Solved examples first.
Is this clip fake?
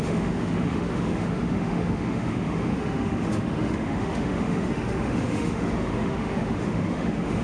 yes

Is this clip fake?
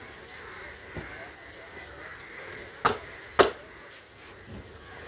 no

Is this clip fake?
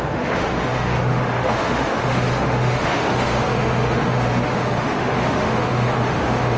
yes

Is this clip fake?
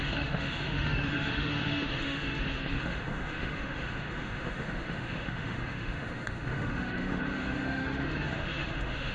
yes